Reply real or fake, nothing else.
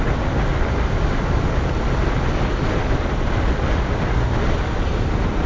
real